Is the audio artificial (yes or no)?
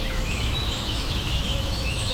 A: yes